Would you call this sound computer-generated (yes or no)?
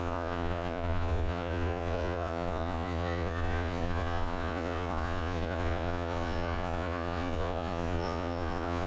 yes